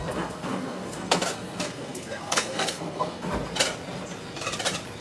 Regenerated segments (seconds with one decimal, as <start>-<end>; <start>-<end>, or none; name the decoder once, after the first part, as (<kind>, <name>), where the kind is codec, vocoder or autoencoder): 0.0-3.3 (codec, SNAC)